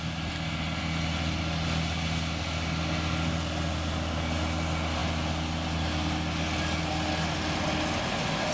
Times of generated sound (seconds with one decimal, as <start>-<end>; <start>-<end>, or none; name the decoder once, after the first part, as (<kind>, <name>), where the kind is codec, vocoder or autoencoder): none